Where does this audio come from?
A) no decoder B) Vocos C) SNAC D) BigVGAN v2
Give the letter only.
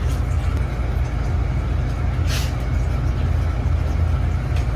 A